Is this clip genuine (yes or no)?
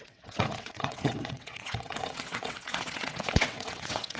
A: no